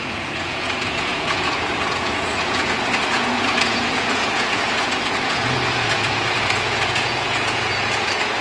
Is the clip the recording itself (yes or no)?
no